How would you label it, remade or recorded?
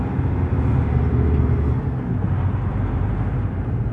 recorded